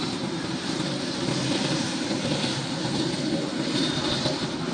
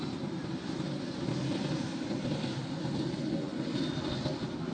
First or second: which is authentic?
second